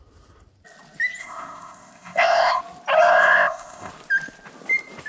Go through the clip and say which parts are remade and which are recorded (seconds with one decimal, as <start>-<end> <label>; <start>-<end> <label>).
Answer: 0.0-1.2 recorded; 1.2-2.6 remade; 2.6-3.1 recorded; 3.1-3.9 remade; 3.9-5.1 recorded